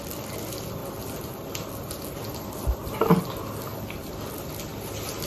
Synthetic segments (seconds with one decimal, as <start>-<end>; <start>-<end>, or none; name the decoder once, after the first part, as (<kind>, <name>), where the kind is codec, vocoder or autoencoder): none